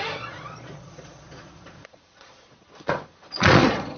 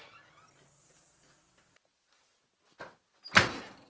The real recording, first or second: second